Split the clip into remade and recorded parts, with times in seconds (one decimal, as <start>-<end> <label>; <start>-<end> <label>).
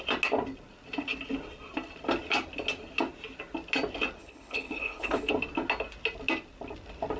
0.0-4.2 recorded; 4.2-5.3 remade; 5.3-7.2 recorded